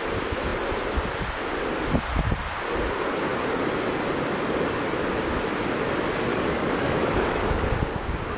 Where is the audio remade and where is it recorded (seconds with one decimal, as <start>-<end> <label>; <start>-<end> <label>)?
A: 0.0-6.3 recorded; 6.3-8.0 remade; 8.0-8.4 recorded